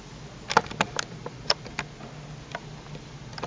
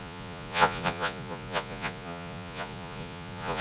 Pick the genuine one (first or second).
first